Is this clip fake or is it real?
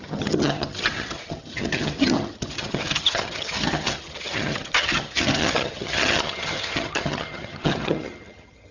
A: fake